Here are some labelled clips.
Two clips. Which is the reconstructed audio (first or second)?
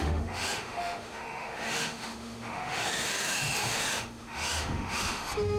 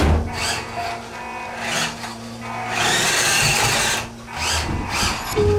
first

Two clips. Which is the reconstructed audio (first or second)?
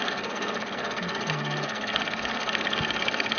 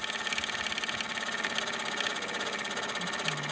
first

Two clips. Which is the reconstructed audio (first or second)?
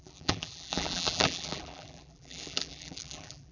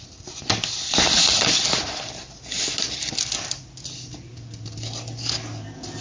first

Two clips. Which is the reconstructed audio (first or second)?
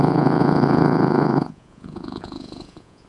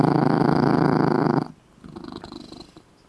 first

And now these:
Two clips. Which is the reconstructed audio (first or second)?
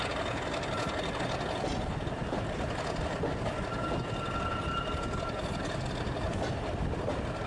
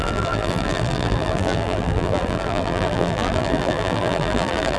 second